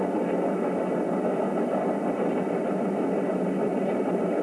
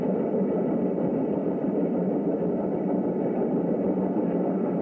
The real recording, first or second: first